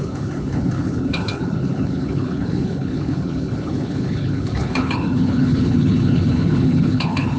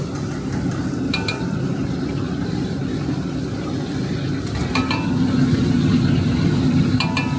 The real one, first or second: second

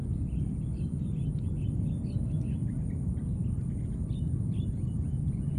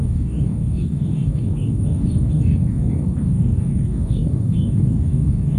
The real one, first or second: first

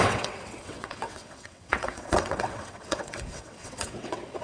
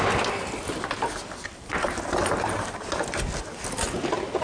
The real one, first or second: second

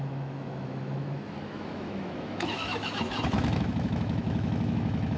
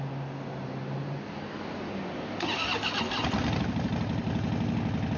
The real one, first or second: second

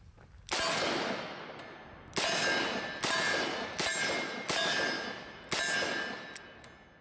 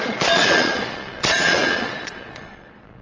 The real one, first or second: first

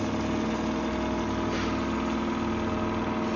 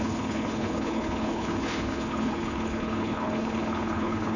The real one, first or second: first